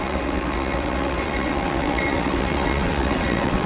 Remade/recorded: remade